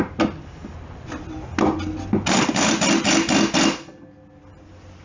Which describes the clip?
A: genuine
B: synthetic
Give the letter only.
A